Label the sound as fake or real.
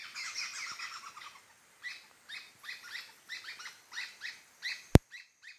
real